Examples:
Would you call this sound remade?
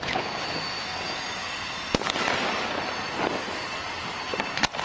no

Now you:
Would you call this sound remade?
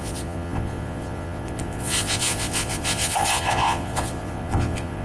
yes